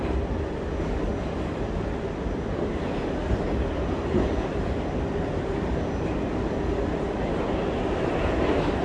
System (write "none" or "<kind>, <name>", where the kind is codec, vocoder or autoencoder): none